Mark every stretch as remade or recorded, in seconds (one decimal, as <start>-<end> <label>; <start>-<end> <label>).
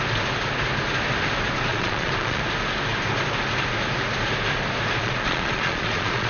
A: 0.0-1.7 recorded; 1.7-2.4 remade; 2.4-5.0 recorded; 5.0-6.3 remade